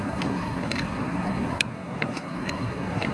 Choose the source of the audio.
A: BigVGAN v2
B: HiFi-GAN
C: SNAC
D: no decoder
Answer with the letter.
C